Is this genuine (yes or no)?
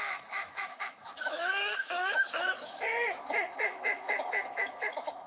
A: no